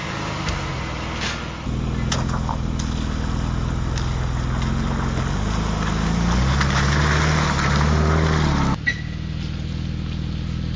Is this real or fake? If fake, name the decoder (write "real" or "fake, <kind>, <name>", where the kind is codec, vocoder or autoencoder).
real